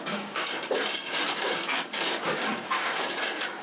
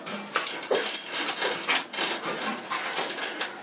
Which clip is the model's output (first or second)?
first